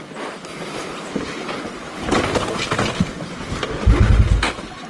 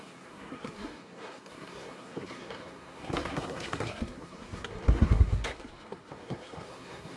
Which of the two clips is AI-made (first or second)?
second